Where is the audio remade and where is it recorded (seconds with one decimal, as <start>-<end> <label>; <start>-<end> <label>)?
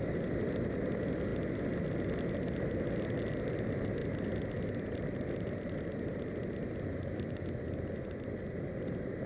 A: 0.0-1.3 remade; 1.3-3.5 recorded; 3.5-4.0 remade; 4.0-4.7 recorded; 4.7-9.3 remade